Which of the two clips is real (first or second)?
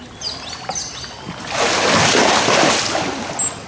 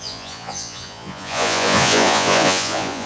first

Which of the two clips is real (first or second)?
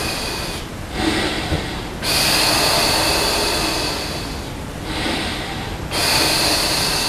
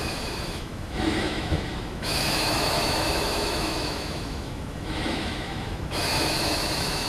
first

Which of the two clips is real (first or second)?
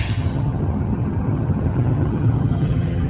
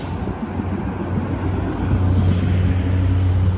second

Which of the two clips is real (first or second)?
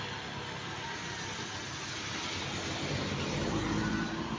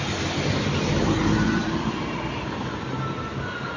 first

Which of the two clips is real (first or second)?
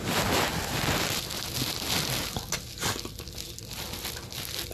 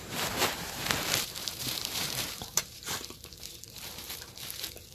first